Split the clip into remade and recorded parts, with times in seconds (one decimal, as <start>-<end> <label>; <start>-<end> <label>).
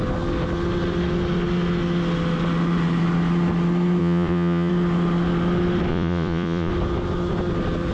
0.0-4.0 recorded; 4.0-4.7 remade; 4.7-5.9 recorded; 5.9-6.7 remade; 6.7-7.9 recorded